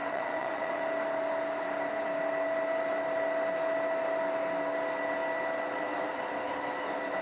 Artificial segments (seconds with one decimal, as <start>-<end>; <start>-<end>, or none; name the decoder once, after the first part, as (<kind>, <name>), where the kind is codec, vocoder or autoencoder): 0.0-0.8 (vocoder, WaveNeXt)